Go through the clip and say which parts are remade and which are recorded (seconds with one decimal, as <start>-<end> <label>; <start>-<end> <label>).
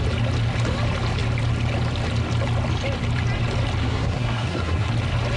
0.0-3.8 recorded; 3.8-4.9 remade; 4.9-5.4 recorded